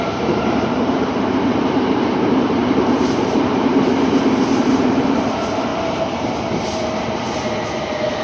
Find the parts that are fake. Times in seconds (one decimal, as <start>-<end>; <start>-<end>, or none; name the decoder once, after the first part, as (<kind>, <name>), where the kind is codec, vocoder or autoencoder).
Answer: 0.0-5.7 (vocoder, BigVGAN v2)